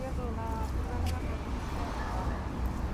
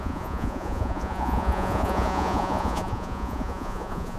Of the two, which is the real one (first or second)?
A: first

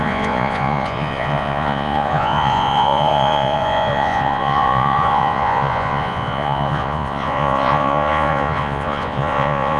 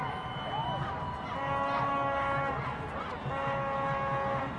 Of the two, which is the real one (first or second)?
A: second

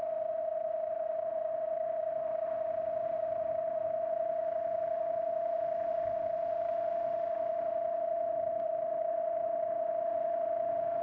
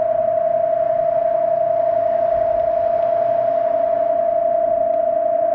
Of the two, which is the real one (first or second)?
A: second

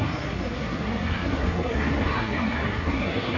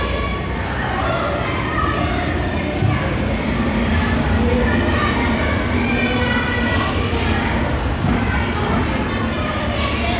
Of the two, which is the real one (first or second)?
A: second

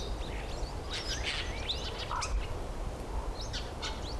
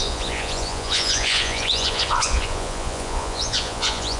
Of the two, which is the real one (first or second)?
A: first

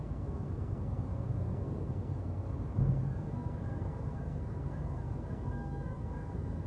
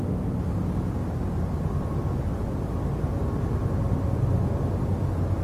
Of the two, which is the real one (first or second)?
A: second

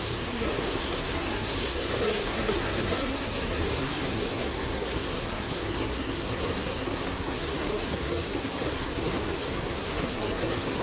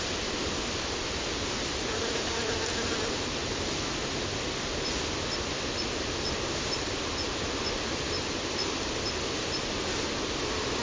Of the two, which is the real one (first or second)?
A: second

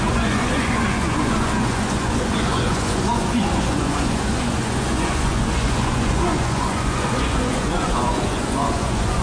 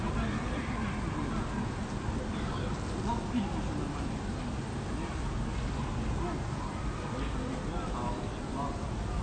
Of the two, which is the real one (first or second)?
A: second